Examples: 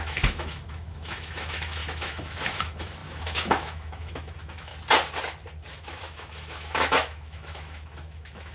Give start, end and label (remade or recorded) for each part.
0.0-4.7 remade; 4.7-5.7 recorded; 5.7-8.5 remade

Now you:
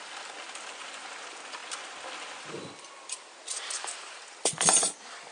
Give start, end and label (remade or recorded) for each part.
0.0-1.6 remade; 1.6-2.4 recorded; 2.4-5.3 remade

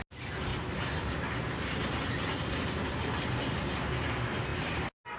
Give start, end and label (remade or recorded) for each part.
0.0-5.2 recorded

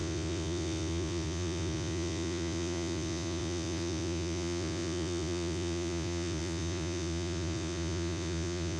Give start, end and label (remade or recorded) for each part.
0.0-8.8 remade

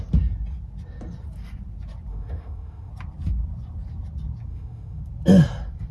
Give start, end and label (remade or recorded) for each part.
0.0-2.1 recorded; 2.1-2.9 remade; 2.9-4.5 recorded; 4.5-5.0 remade; 5.0-5.9 recorded